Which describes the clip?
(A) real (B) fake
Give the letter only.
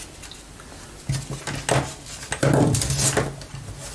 A